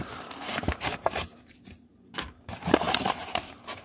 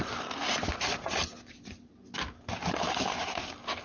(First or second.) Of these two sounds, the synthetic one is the first